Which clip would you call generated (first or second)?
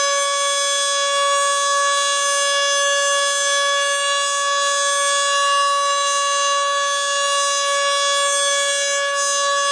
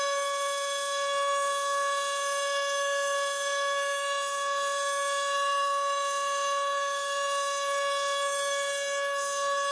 second